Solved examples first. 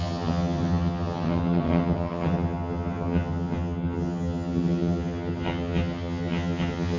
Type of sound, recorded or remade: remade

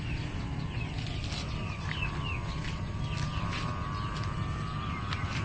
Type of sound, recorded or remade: recorded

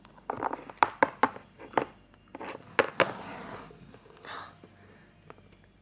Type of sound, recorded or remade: recorded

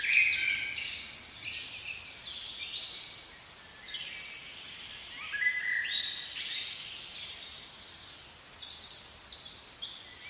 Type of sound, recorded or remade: recorded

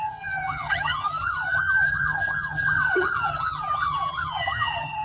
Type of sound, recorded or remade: remade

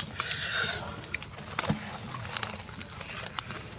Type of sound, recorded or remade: recorded